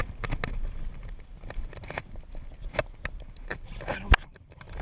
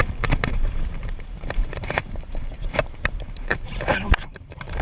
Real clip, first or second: first